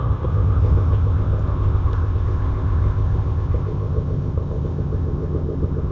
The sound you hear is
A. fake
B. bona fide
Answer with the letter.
A